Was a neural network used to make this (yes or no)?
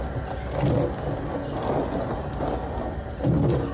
no